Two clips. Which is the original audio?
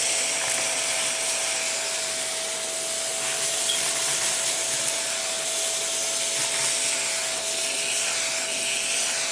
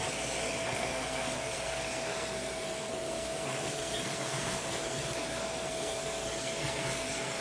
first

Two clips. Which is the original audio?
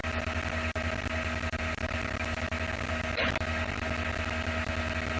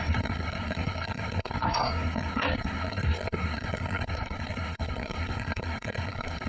first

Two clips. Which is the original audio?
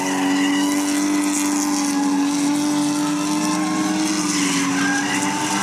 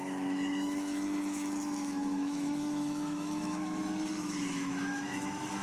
first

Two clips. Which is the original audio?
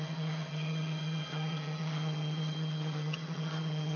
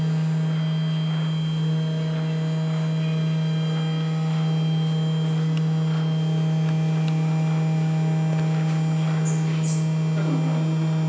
second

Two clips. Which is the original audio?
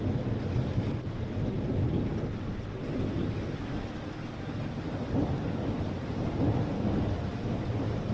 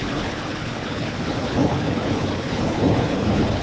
first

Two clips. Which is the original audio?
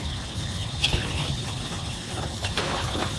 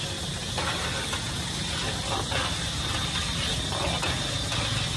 second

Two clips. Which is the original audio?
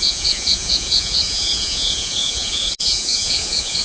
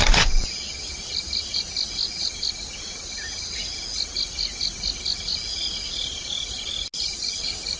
second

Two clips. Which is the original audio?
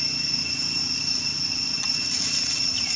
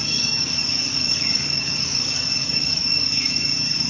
first